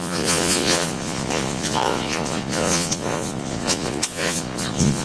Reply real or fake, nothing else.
fake